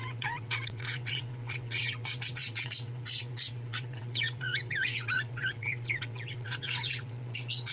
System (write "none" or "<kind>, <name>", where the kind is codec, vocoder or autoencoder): vocoder, WaveNeXt